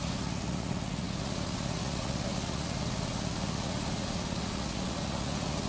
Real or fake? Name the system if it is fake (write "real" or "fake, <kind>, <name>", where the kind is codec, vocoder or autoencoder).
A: fake, vocoder, Vocos